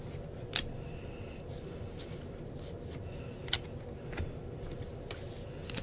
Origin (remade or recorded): recorded